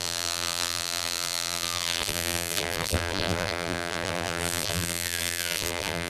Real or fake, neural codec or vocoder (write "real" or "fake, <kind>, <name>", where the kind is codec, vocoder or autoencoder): fake, vocoder, BigVGAN v2